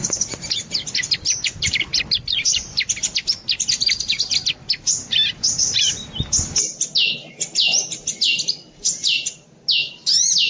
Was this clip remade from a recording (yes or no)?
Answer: no